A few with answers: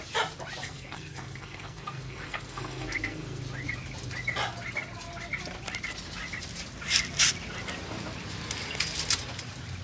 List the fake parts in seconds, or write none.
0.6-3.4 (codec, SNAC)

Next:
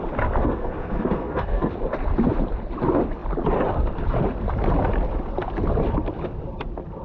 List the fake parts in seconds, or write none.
0.4-1.7 (codec, SNAC)

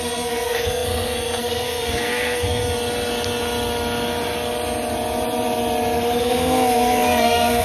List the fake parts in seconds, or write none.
0.0-2.6 (codec, SNAC); 6.2-7.6

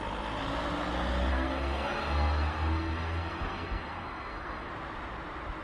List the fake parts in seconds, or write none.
1.3-4.7 (codec, SNAC)

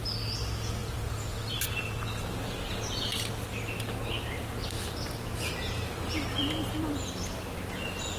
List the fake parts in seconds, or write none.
none

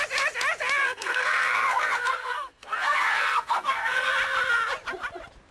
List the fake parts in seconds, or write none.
0.8-4.1 (codec, SNAC)